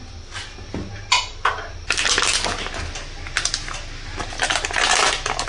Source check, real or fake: real